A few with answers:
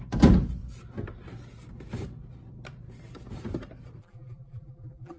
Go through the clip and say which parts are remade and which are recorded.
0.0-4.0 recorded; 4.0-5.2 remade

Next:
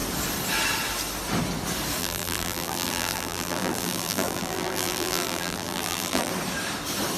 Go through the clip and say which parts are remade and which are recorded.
0.0-2.0 recorded; 2.0-6.3 remade; 6.3-7.2 recorded

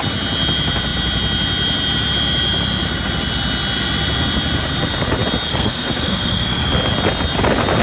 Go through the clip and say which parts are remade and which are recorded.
0.0-5.5 recorded; 5.5-6.7 remade; 6.7-7.8 recorded

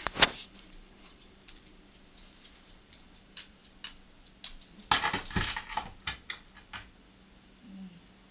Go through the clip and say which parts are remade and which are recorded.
0.0-3.6 remade; 3.6-8.3 recorded